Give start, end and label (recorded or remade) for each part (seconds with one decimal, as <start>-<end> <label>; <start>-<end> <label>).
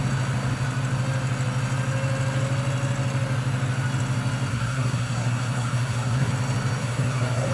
0.0-4.5 recorded; 4.5-6.3 remade; 6.3-6.8 recorded; 6.8-7.5 remade